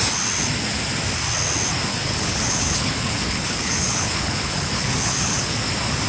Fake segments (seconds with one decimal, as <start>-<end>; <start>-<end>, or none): 1.9-5.6